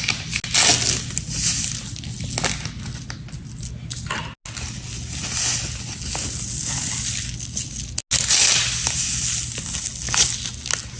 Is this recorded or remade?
recorded